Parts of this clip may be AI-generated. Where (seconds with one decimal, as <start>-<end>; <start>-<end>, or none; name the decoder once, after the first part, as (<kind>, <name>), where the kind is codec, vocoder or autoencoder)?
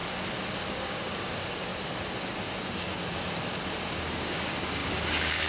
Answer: 0.7-1.7 (codec, DAC); 4.1-5.5